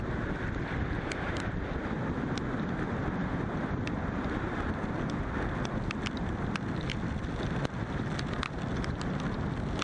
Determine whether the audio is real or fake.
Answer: real